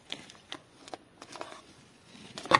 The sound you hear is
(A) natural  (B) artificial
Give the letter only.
B